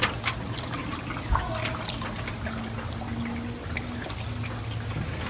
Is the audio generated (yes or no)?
no